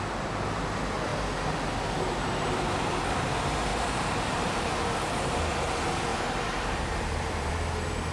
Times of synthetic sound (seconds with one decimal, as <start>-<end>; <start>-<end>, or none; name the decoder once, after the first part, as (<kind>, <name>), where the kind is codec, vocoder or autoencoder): 3.7-5.4 (vocoder, BigVGAN v2); 6.1-7.5